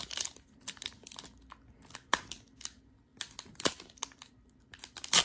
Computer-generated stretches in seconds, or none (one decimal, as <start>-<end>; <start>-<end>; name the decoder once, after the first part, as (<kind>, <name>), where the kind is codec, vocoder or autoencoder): none